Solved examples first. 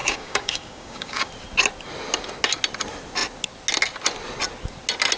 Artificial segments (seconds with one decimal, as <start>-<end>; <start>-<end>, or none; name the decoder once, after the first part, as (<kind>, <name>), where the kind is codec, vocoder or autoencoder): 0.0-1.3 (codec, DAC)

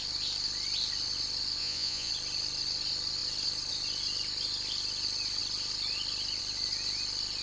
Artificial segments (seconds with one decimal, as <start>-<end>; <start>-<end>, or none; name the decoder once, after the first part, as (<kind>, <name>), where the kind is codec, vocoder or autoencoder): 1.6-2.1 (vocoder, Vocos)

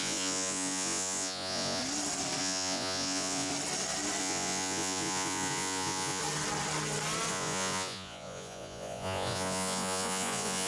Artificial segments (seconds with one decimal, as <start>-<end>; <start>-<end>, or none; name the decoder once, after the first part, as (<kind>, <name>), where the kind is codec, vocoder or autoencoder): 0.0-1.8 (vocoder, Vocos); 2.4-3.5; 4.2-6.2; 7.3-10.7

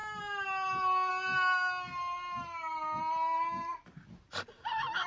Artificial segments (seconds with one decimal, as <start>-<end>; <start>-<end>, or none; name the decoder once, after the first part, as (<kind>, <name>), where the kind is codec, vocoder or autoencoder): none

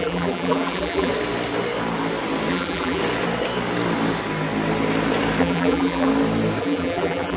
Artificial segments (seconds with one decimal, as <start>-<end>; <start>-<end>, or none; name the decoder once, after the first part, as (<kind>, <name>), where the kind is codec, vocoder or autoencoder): 0.0-1.1 (vocoder, BigVGAN v2); 2.5-3.0; 5.4-6.1; 6.6-7.4